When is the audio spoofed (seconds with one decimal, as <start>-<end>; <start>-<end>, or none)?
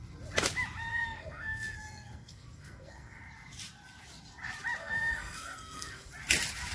0.9-3.2; 4.8-6.1